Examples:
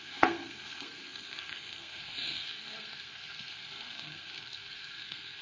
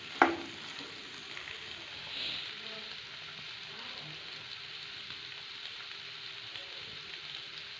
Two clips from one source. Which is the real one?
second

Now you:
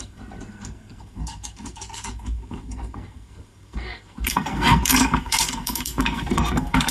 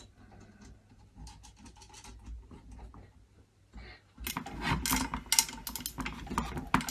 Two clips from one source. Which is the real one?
second